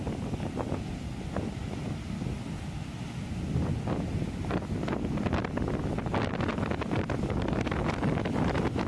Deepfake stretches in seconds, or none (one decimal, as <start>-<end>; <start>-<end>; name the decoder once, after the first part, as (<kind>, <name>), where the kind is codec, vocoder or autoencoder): none